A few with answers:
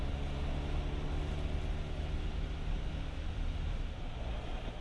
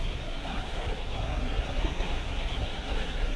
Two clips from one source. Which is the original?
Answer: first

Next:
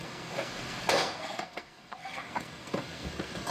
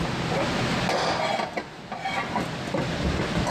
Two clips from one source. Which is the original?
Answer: second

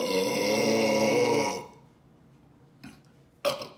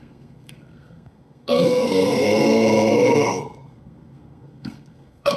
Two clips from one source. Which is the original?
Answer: first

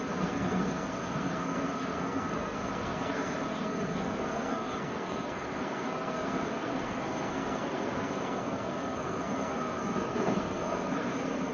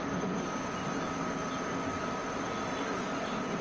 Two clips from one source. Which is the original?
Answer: second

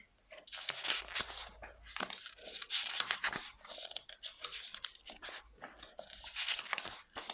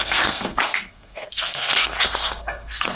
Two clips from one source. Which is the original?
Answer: first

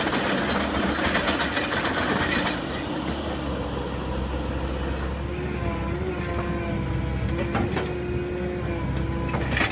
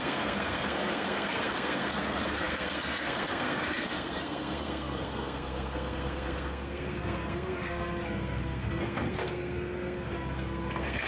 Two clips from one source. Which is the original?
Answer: first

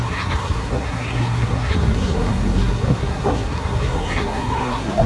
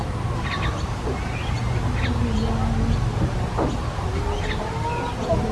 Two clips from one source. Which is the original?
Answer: second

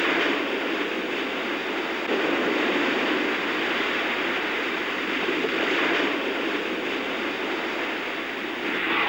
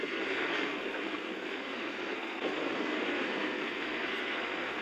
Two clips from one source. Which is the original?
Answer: first